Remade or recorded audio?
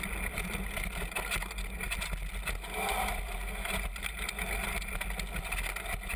recorded